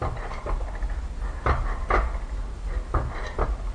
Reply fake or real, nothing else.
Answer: real